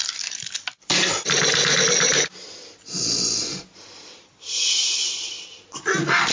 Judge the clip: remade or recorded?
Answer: recorded